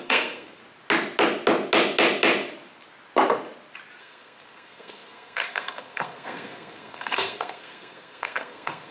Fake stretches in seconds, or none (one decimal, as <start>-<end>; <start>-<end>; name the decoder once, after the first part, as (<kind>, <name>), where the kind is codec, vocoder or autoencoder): 0.0-0.6 (codec, SNAC); 4.0-8.9